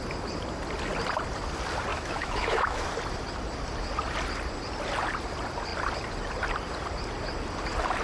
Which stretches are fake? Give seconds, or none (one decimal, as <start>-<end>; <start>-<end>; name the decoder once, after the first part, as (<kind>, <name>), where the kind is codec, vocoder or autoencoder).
1.9-2.9 (autoencoder, DAC-VAE)